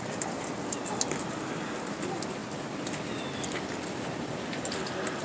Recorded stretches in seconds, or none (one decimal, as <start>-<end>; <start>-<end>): 0.0-5.2